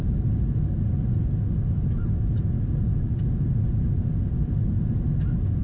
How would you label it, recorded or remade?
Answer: recorded